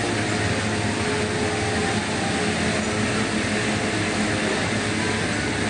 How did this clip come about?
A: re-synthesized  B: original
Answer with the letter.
B